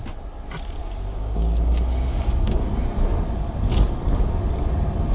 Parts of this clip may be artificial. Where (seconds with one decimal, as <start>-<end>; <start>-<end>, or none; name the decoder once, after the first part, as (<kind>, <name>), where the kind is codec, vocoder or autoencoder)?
0.8-2.7 (codec, DAC)